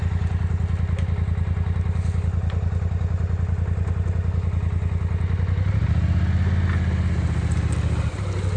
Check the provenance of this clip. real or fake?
real